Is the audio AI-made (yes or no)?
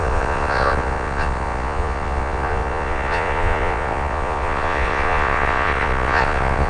yes